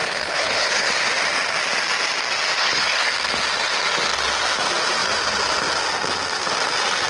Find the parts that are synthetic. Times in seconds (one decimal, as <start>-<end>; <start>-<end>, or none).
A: 0.0-0.9; 2.6-3.1